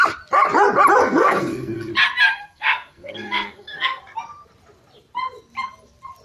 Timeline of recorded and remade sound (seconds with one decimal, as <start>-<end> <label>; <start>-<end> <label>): 0.0-1.0 recorded; 1.0-1.9 remade; 1.9-2.3 recorded; 2.3-4.0 remade; 4.0-6.2 recorded